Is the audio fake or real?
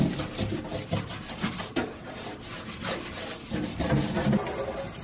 real